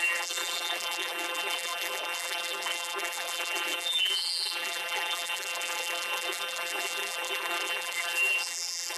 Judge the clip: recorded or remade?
remade